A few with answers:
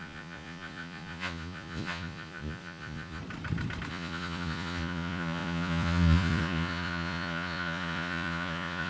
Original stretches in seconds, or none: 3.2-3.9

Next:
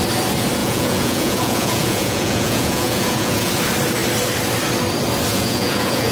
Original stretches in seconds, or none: 0.0-0.6; 3.5-5.3